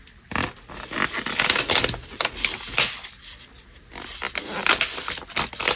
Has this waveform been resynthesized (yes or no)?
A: no